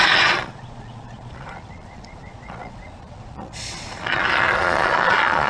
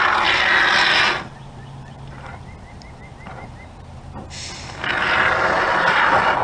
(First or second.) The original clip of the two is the second